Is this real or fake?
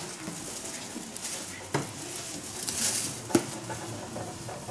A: real